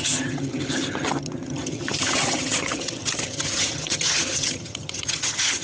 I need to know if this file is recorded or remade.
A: remade